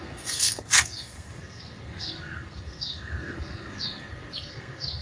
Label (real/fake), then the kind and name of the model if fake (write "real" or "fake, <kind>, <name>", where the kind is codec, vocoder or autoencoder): fake, codec, SNAC